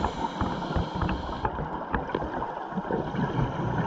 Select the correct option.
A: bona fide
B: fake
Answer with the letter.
A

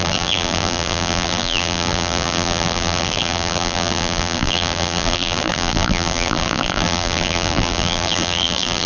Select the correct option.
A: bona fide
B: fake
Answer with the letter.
B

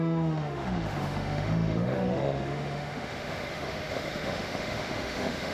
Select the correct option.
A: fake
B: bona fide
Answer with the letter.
A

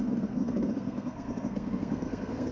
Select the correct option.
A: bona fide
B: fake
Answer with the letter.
B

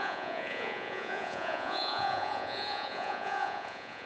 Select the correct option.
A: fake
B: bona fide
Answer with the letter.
A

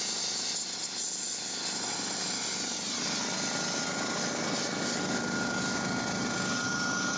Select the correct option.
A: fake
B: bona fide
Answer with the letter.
B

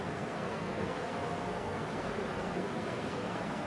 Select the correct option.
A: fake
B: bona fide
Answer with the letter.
A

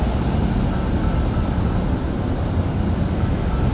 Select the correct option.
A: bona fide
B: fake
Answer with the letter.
A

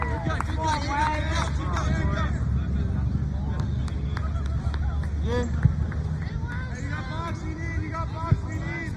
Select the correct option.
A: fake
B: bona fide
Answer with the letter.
B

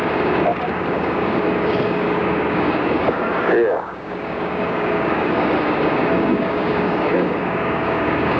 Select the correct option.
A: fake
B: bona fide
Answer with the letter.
A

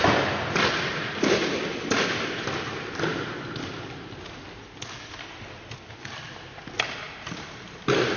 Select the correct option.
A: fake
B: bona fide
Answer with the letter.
B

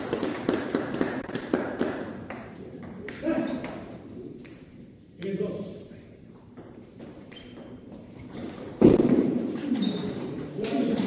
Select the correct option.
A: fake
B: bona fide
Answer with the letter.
A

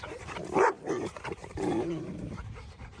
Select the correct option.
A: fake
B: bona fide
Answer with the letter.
A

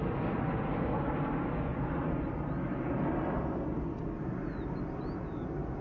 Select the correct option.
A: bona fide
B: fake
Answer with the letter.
A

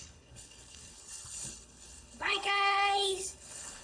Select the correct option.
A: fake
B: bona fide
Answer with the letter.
A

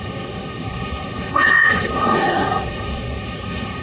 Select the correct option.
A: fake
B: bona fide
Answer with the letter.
A